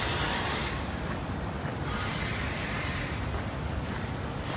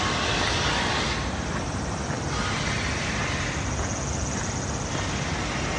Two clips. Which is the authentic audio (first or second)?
second